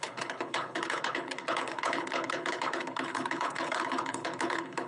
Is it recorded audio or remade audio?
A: remade